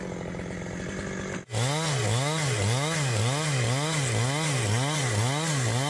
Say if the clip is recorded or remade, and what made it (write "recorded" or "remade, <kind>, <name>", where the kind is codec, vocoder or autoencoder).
recorded